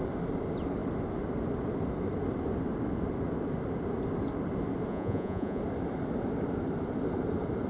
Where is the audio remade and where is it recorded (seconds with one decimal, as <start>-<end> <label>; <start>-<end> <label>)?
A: 0.0-4.9 recorded; 4.9-5.6 remade; 5.6-7.7 recorded